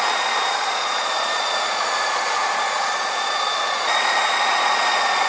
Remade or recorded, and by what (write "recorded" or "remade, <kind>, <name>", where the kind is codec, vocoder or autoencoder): remade, vocoder, Vocos